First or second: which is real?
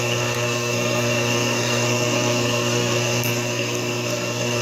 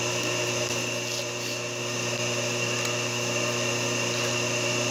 second